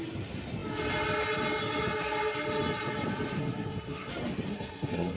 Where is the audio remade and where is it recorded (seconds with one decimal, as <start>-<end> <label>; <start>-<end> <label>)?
0.0-3.4 recorded; 3.4-4.1 remade; 4.1-4.5 recorded; 4.5-5.2 remade